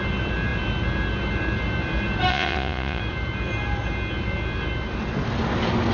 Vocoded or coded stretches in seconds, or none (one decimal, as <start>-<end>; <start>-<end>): 2.3-3.0

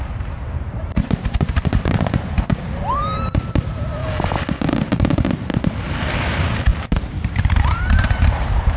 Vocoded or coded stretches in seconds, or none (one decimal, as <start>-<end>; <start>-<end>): 0.0-4.0; 4.7-5.5; 6.2-8.8

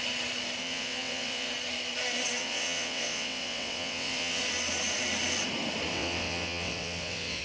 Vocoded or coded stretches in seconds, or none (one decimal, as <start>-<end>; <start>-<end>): 0.6-1.5; 2.4-4.4; 5.9-7.4

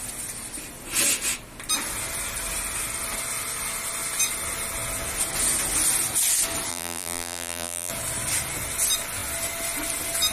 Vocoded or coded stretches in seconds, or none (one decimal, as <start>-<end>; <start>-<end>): 6.7-7.9